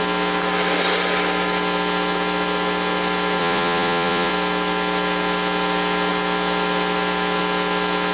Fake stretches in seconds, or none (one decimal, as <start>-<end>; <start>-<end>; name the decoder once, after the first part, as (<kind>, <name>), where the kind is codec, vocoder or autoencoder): 3.4-4.3 (vocoder, Vocos)